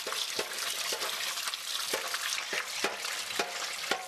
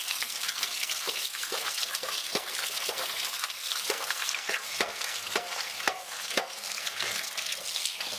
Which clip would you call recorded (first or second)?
first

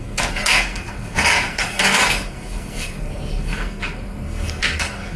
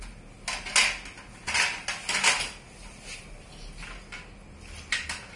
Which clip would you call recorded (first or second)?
second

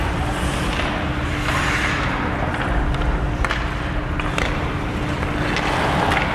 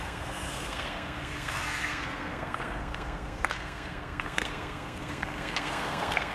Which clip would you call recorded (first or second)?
first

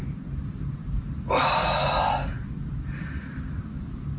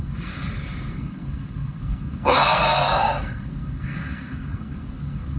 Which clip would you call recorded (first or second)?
first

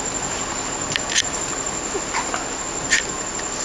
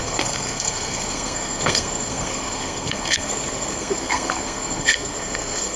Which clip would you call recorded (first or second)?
first